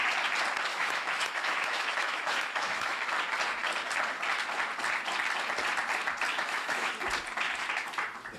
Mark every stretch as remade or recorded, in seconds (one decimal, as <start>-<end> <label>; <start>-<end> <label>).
0.0-0.7 recorded; 0.7-3.0 remade; 3.0-6.3 recorded; 6.3-6.9 remade; 6.9-8.4 recorded